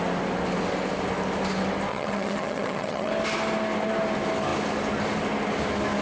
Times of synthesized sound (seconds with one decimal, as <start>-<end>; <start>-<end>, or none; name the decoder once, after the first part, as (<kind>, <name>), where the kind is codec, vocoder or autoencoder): 1.9-3.1 (vocoder, HiFi-GAN)